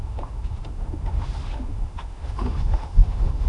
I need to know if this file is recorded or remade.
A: remade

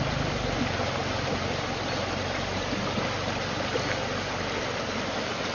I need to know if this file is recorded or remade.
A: recorded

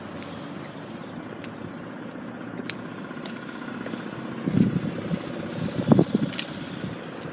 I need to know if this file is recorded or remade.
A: recorded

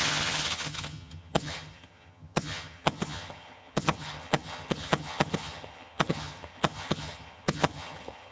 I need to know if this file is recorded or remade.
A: remade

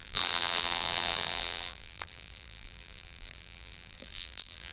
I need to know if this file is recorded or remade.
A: remade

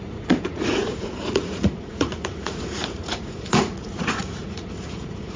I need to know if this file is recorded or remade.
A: remade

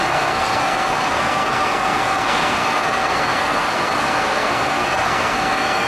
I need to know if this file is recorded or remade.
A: remade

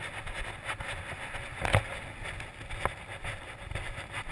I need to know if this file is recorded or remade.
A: recorded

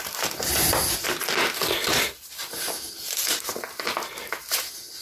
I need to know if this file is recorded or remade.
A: recorded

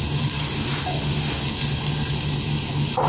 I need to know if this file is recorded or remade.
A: recorded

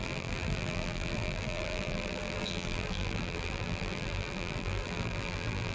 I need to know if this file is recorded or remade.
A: remade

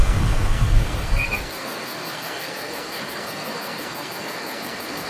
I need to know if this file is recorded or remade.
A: remade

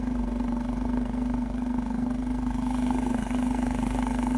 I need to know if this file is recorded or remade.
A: remade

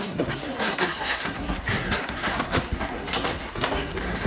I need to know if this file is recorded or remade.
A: remade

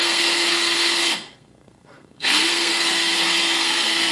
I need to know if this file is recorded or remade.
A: remade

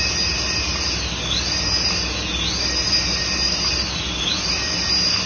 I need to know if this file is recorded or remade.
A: recorded